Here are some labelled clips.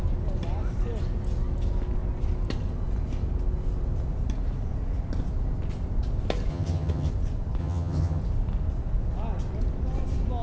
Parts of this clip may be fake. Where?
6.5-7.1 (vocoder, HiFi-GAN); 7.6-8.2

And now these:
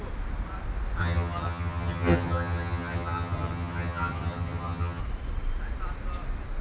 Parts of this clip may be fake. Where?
1.0-5.0 (vocoder, HiFi-GAN)

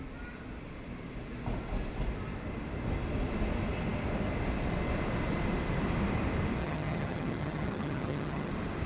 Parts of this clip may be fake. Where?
6.6-8.5 (vocoder, HiFi-GAN)